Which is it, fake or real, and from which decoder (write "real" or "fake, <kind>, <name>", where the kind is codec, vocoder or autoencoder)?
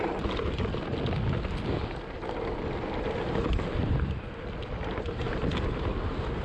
real